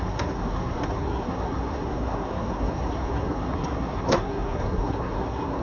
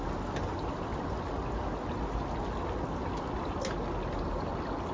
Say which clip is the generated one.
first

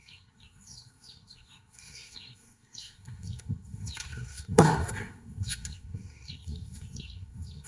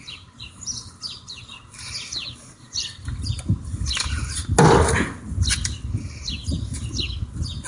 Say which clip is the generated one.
first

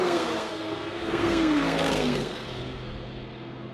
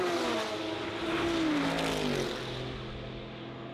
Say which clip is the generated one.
first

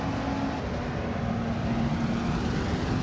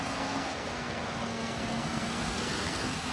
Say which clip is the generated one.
second